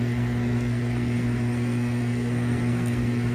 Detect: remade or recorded remade